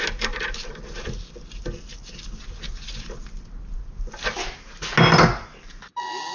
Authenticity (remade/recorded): recorded